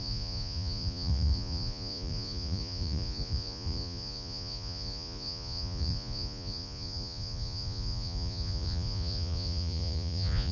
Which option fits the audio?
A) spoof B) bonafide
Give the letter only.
A